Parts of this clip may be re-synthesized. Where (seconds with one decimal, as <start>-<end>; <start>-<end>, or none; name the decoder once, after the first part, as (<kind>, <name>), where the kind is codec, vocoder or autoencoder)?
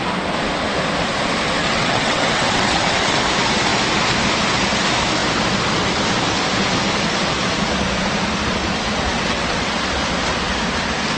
1.6-3.1 (vocoder, WaveNeXt); 9.1-9.7